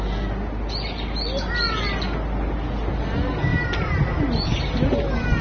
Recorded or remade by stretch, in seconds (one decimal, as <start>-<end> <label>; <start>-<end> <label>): 0.0-3.5 recorded; 3.5-4.2 remade; 4.2-5.4 recorded